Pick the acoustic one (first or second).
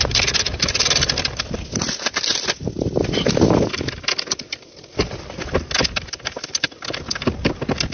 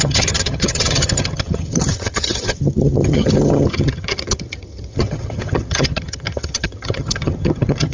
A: first